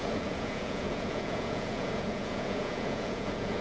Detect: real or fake fake